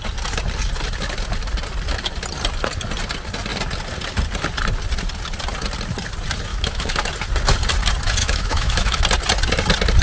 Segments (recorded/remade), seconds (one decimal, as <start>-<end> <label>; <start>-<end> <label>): 0.0-6.5 recorded; 6.5-7.1 remade; 7.1-8.2 recorded; 8.2-9.0 remade; 9.0-10.0 recorded